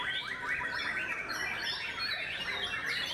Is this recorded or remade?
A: recorded